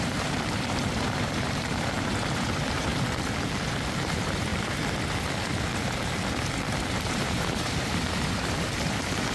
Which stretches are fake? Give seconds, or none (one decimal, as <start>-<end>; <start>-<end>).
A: 0.0-2.9; 3.9-4.5; 6.9-9.3